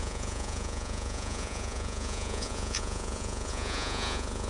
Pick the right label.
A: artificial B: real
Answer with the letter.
A